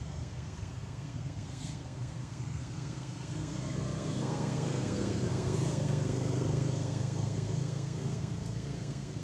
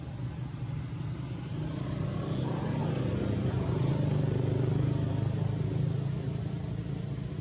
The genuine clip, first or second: second